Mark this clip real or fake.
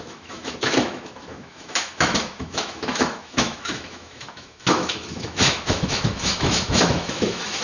fake